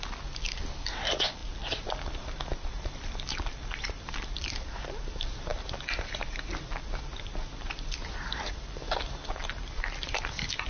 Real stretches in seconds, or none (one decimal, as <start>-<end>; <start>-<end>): none